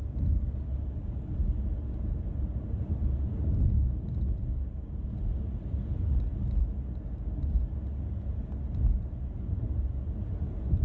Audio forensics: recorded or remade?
recorded